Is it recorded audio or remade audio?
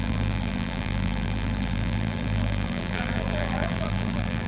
remade